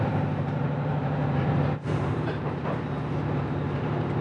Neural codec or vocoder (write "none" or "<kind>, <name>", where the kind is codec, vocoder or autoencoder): vocoder, BigVGAN v2